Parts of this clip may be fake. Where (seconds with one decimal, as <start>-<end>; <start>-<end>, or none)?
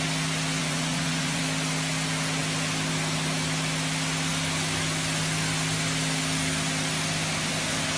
0.6-1.4